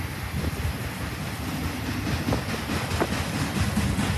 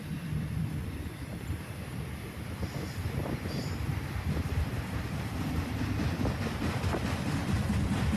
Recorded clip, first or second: first